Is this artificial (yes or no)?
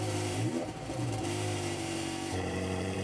yes